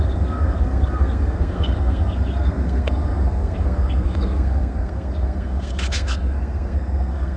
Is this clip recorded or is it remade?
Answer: remade